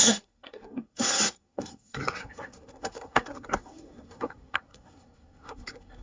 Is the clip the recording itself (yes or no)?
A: no